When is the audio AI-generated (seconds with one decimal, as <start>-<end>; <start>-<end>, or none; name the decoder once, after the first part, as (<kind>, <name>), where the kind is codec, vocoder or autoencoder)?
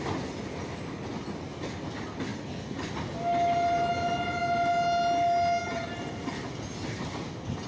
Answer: none